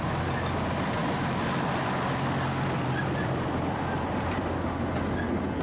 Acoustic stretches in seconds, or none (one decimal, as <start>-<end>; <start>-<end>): 0.0-1.0; 4.4-5.6